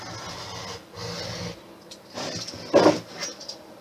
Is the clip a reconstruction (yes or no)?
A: no